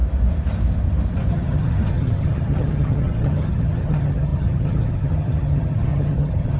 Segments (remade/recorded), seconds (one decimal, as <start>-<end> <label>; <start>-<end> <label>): 0.0-1.3 recorded; 1.3-6.6 remade